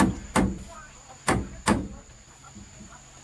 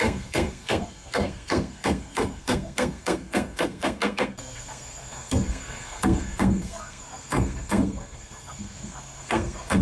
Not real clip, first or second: second